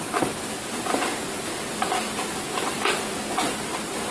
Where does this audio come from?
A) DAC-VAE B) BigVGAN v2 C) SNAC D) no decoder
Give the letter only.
D